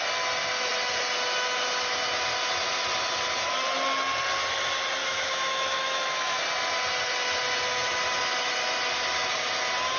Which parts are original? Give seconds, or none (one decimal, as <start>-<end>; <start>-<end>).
0.0-5.0; 6.4-10.0